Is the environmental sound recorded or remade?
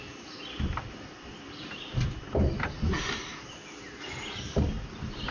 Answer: recorded